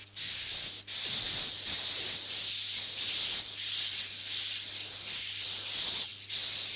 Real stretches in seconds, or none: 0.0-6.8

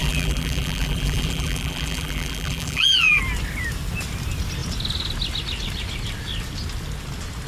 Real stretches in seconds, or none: 3.2-7.5

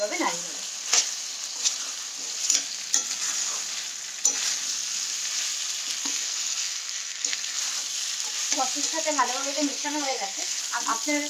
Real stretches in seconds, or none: 0.0-6.0; 7.6-9.4; 10.6-11.3

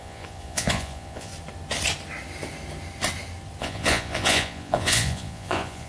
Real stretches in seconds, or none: 1.3-3.6

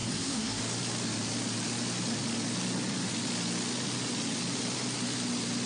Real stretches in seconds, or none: 0.6-5.7